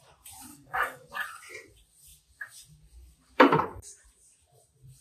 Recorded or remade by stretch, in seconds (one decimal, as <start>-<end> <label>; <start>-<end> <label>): 0.0-0.5 recorded; 0.5-1.1 remade; 1.1-5.0 recorded